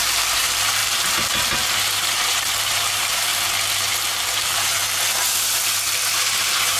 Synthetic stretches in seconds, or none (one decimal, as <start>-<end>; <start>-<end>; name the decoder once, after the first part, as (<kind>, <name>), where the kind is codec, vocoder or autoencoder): 0.0-3.3 (vocoder, BigVGAN v2); 4.1-4.8; 6.2-6.8